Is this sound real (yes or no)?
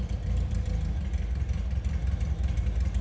yes